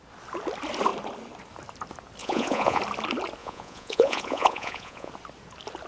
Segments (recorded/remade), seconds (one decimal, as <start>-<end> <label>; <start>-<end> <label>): 0.0-2.2 recorded; 2.2-2.8 remade; 2.8-3.4 recorded; 3.4-5.1 remade; 5.1-5.9 recorded